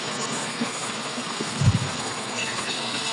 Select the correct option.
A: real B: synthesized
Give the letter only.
B